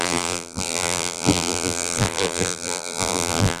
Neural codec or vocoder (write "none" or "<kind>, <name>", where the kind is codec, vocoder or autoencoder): vocoder, BigVGAN v2